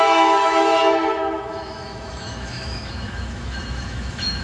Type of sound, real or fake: fake